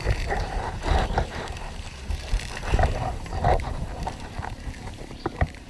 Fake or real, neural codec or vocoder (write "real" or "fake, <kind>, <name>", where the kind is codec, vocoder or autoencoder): fake, vocoder, BigVGAN v2